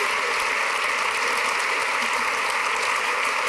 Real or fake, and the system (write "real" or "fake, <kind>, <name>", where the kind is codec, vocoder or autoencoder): real